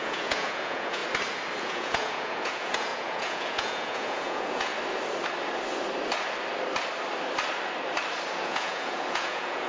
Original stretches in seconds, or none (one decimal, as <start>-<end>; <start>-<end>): 1.0-1.6; 4.7-8.4